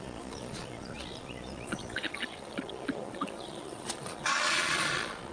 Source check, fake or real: fake